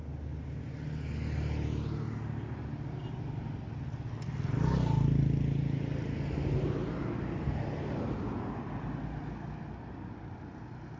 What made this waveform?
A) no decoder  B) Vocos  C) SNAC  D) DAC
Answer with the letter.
A